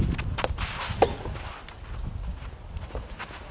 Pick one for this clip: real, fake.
real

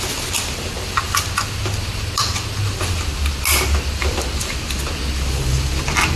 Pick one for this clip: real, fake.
real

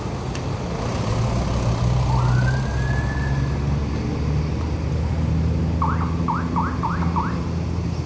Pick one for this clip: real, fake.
real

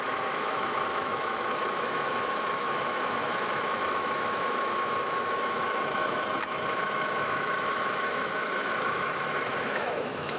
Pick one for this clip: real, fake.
fake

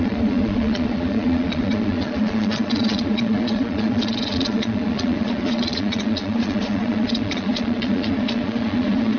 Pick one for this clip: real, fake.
fake